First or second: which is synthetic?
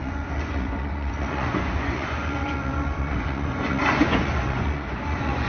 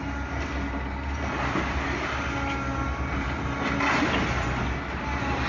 first